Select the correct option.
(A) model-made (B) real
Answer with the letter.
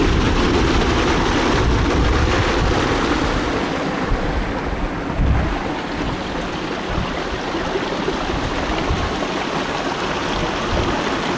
B